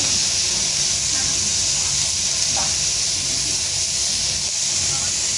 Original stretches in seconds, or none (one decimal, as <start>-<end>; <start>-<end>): 0.0-5.4